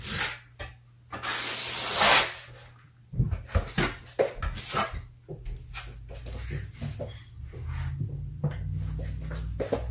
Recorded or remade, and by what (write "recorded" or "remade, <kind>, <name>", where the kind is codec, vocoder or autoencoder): recorded